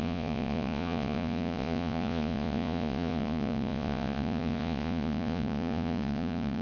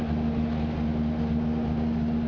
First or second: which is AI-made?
first